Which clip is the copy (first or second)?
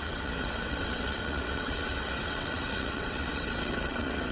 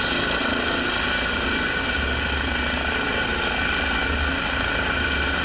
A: first